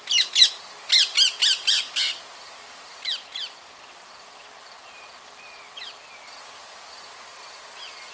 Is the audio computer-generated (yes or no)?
yes